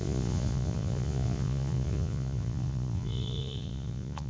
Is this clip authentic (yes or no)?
no